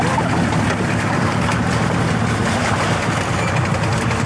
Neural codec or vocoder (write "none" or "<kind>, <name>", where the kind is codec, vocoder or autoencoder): none